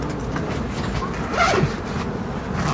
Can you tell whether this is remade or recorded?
recorded